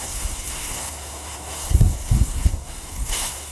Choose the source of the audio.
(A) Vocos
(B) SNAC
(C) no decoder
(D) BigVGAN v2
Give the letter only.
B